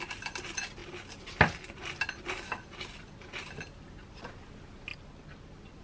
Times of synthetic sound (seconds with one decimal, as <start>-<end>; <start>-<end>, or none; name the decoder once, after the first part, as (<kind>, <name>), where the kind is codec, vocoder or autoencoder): none